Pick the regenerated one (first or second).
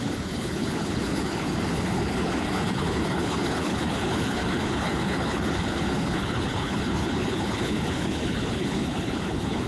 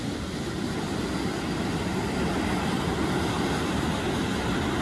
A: first